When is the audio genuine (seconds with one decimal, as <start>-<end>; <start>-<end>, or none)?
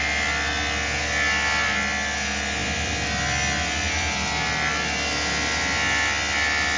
0.0-6.8